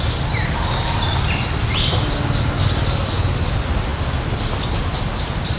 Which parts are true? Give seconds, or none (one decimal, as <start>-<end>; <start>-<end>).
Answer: 0.0-5.6